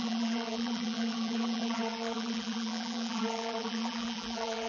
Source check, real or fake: fake